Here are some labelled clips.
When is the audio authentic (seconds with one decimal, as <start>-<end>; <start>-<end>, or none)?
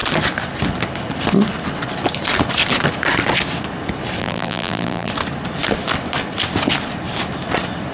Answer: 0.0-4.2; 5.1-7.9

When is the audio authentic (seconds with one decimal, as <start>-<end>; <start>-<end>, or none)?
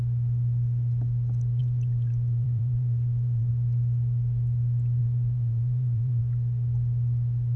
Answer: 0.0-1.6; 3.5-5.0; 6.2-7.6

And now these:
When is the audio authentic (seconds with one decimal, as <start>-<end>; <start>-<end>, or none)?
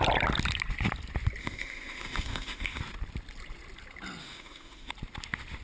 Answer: 0.0-1.4; 2.8-4.2; 4.9-5.6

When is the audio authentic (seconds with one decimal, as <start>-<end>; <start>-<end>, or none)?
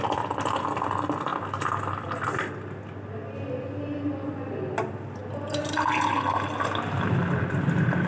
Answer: 1.3-4.8; 5.2-6.1